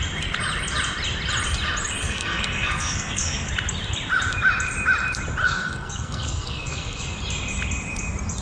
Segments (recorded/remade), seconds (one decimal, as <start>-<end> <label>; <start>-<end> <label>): 0.0-2.0 recorded; 2.0-3.5 remade; 3.5-5.4 recorded; 5.4-7.0 remade; 7.0-8.4 recorded